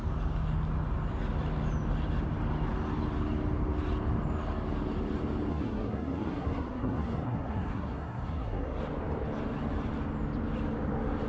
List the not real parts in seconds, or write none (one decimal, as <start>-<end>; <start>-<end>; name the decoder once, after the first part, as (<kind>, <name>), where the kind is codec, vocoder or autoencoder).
5.5-8.8 (codec, SNAC)